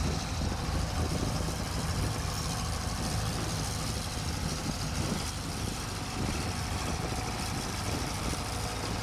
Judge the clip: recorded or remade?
remade